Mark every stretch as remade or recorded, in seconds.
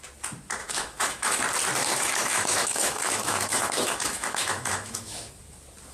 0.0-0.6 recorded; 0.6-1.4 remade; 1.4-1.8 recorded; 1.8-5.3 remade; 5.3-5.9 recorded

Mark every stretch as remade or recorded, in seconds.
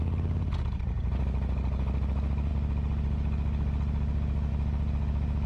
0.0-5.5 recorded